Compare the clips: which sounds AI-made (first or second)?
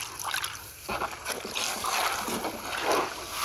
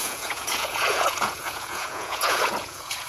second